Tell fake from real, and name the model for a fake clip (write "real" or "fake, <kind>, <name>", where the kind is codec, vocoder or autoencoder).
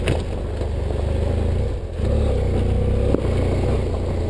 real